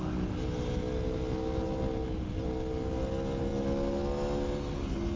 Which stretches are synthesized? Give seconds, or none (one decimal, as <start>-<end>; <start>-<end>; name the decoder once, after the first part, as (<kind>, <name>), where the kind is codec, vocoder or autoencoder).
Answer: none